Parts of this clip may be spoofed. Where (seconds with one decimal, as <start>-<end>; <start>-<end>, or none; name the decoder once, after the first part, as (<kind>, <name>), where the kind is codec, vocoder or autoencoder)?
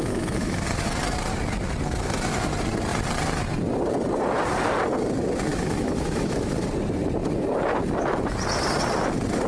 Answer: 0.0-0.6 (autoencoder, DAC-VAE); 5.5-6.5